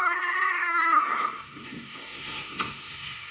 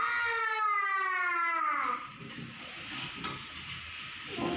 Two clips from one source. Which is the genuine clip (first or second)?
second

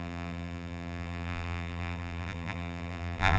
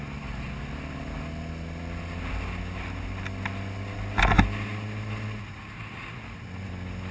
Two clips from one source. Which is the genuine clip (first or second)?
second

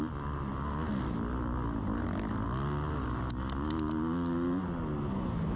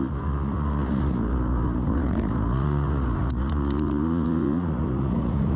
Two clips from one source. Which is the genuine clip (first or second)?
first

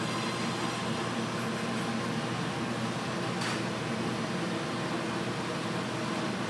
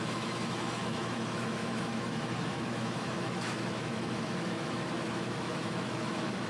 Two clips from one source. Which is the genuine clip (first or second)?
first